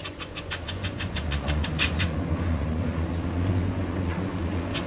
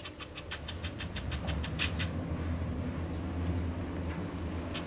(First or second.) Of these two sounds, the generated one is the first